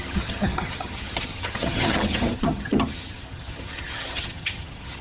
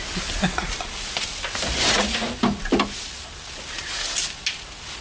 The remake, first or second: first